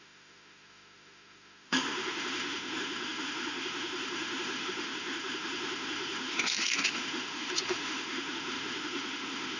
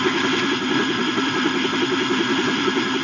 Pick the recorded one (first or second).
second